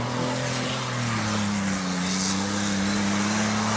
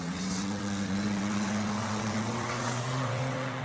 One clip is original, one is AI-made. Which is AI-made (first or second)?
second